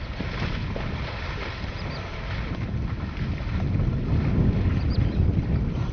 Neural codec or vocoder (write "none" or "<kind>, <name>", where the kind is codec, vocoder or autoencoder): none